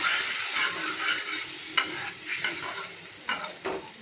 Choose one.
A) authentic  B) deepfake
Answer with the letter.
A